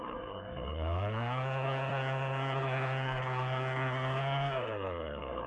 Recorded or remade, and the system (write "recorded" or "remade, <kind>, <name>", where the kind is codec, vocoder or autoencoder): remade, codec, SNAC